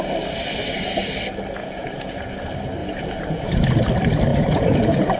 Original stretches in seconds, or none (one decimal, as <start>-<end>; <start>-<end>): 0.0-1.6; 2.4-2.8; 3.8-4.3